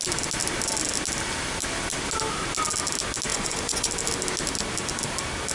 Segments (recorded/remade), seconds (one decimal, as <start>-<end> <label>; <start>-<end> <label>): 0.0-3.3 recorded; 3.3-3.9 remade; 3.9-5.5 recorded